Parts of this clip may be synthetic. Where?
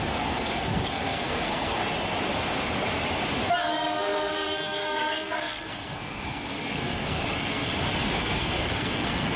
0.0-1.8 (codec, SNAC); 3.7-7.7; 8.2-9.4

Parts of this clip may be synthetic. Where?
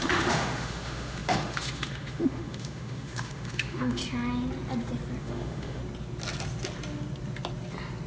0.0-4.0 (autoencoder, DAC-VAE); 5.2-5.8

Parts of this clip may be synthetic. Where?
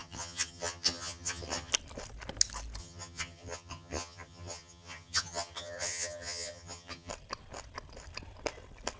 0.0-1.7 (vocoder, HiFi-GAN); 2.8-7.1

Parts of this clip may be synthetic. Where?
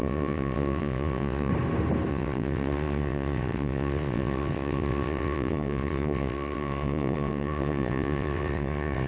0.0-1.5 (vocoder, WaveNeXt); 2.1-9.1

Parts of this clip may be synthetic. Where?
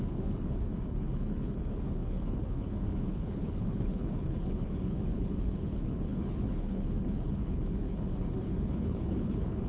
0.0-9.7 (codec, HILCodec)